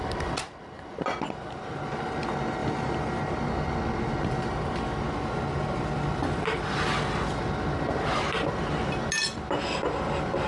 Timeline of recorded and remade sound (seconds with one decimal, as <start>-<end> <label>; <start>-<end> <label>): 0.0-2.6 recorded; 2.6-3.2 remade; 3.2-10.5 recorded